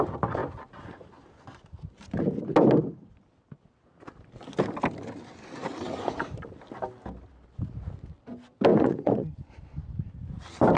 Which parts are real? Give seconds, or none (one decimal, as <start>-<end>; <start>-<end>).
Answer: 0.0-8.7; 9.5-10.8

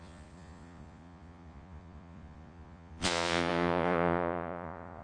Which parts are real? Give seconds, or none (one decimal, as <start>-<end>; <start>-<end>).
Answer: none

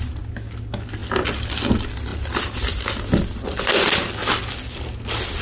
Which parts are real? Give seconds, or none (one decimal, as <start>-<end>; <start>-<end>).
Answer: 0.0-5.4